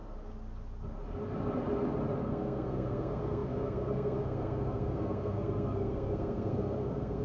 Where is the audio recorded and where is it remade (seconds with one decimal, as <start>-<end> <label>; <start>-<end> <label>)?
0.0-2.2 recorded; 2.2-7.2 remade